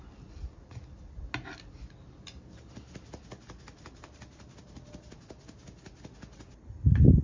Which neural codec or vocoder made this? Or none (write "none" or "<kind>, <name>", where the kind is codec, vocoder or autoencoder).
none